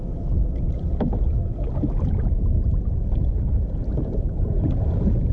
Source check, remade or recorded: recorded